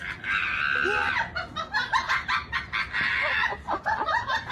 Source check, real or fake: real